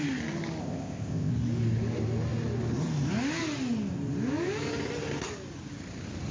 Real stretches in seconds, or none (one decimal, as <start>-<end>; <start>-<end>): 0.0-0.6; 1.3-6.3